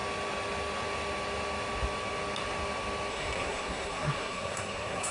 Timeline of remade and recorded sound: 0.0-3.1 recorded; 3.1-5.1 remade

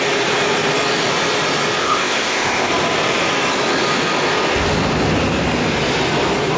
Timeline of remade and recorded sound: 0.0-1.8 recorded; 1.8-2.7 remade; 2.7-6.6 recorded

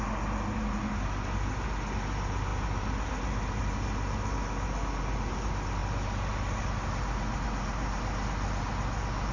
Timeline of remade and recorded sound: 0.0-9.3 recorded

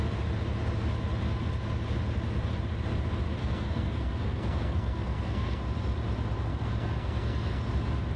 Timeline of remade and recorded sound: 0.0-3.4 recorded; 3.4-5.6 remade; 5.6-6.5 recorded; 6.5-7.6 remade; 7.6-8.2 recorded